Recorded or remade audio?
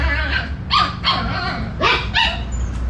recorded